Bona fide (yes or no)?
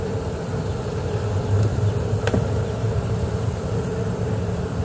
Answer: yes